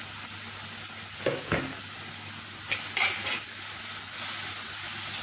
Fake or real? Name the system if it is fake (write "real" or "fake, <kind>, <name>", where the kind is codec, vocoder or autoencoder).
real